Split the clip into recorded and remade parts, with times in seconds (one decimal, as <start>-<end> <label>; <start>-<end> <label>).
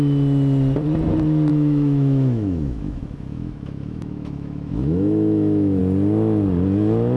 0.0-1.5 recorded; 1.5-5.8 remade; 5.8-7.2 recorded